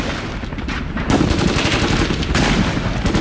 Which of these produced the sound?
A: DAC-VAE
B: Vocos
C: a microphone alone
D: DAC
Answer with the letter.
C